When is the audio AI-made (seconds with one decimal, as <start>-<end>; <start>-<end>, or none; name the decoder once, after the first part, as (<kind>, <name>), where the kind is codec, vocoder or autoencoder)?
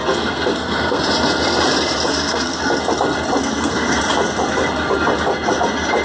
0.0-1.0 (codec, SNAC); 2.1-2.6; 3.4-4.0